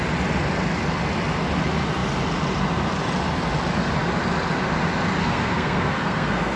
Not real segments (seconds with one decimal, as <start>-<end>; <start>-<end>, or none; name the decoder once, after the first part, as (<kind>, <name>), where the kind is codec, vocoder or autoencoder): 5.2-6.6 (codec, SNAC)